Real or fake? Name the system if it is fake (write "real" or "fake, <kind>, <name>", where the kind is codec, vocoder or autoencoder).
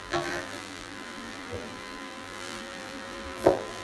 fake, vocoder, BigVGAN v2